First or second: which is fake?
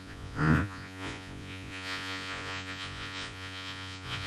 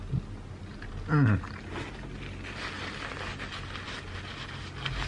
first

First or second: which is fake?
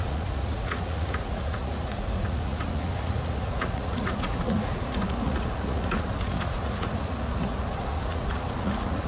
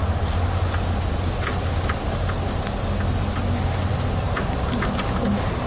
first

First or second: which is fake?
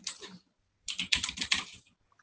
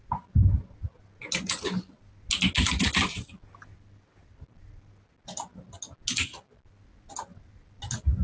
first